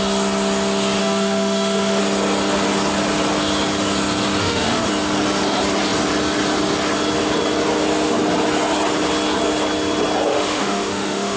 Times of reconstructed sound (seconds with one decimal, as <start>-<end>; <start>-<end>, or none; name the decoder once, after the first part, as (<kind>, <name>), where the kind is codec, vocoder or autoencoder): 1.0-2.0 (autoencoder, DAC-VAE); 4.4-4.9; 10.3-11.4